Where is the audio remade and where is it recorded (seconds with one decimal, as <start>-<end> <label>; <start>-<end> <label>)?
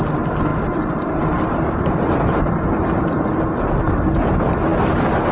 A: 0.0-0.5 recorded; 0.5-3.4 remade; 3.4-5.3 recorded